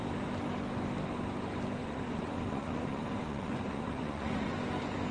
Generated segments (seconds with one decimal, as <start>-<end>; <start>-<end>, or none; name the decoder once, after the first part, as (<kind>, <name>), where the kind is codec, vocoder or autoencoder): 1.8-4.5 (vocoder, Vocos)